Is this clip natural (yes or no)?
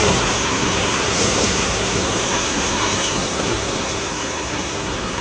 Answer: no